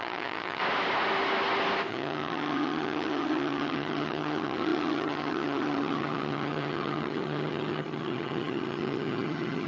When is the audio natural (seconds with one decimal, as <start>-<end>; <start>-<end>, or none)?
0.6-1.9